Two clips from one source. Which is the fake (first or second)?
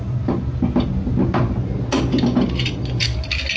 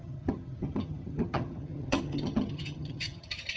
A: second